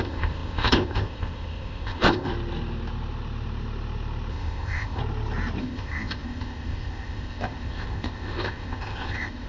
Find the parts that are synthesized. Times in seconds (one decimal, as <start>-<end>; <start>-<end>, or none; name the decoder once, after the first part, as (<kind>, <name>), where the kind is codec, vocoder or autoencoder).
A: 0.0-2.3 (codec, ZipCodec); 4.3-5.0; 5.6-9.5